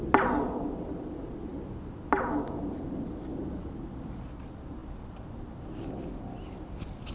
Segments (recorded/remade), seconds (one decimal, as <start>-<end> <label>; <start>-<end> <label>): 0.0-7.1 recorded